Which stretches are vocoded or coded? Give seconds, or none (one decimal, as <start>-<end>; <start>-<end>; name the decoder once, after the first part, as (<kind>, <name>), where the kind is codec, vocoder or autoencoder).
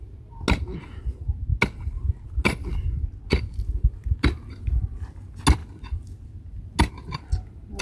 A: none